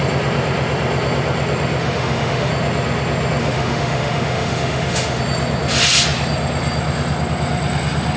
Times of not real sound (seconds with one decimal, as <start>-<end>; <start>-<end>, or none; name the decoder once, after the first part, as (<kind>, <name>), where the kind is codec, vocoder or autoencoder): 1.8-2.5 (autoencoder, DAC-VAE); 3.4-5.2